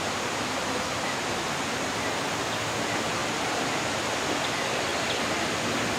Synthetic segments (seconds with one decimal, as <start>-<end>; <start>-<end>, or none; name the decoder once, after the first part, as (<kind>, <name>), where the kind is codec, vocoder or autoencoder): 3.2-4.0 (vocoder, BigVGAN v2)